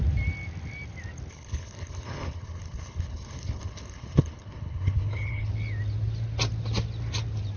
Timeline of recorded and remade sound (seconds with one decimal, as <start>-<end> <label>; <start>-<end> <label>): 0.0-1.3 recorded; 1.3-5.5 remade; 5.5-7.6 recorded